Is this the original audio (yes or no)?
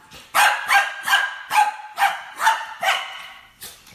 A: yes